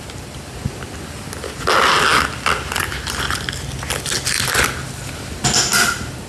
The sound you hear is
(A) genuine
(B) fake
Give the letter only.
A